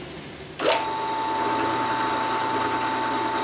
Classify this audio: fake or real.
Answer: real